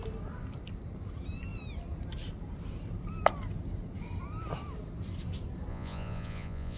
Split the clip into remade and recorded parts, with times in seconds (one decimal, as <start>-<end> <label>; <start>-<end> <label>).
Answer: 0.0-5.7 recorded; 5.7-6.8 remade